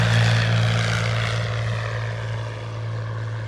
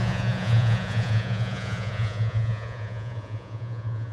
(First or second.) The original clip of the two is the first